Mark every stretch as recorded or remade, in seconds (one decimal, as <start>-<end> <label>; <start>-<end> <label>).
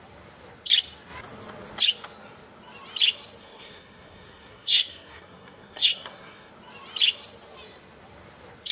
0.0-3.4 recorded; 3.4-6.5 remade; 6.5-8.7 recorded